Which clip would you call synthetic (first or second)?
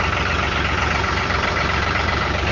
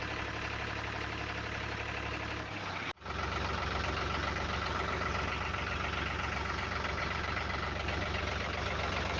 first